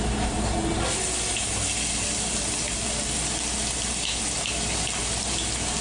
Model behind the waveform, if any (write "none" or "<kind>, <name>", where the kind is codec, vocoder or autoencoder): none